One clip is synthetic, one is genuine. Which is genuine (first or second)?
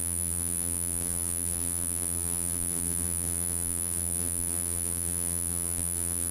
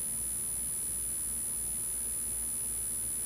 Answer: second